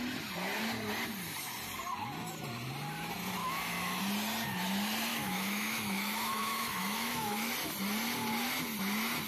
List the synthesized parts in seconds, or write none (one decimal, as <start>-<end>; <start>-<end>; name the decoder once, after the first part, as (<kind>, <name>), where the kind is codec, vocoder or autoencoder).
3.4-4.0 (autoencoder, DAC-VAE); 5.1-7.5